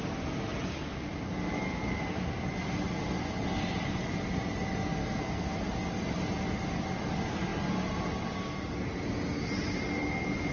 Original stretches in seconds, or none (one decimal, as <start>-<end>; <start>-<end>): 0.0-5.0; 5.5-10.5